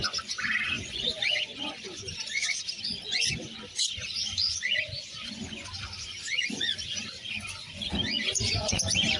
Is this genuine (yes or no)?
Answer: no